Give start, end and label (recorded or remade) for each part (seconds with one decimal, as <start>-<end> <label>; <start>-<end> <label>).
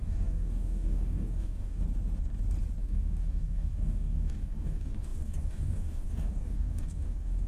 0.0-1.8 remade; 1.8-2.8 recorded; 2.8-7.5 remade